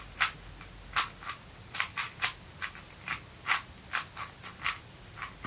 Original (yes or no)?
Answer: yes